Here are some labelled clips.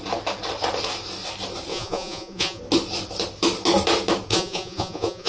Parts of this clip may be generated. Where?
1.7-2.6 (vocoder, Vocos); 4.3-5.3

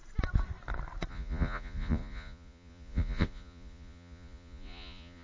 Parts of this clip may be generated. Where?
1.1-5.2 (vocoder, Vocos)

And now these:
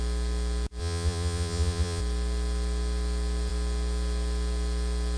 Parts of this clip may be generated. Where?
0.8-2.0 (vocoder, Vocos)

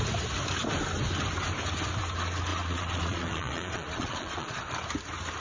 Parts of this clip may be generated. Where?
2.5-4.6 (vocoder, Vocos)